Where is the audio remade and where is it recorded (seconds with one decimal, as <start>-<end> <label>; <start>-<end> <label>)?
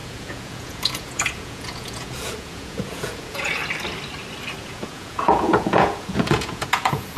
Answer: 0.0-3.6 remade; 3.6-4.6 recorded; 4.6-7.2 remade